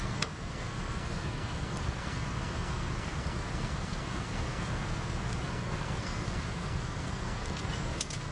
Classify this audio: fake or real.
fake